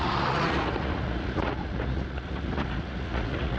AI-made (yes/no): yes